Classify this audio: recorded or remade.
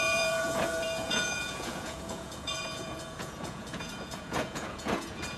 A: remade